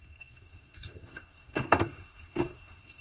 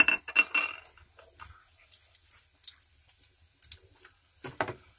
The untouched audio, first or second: second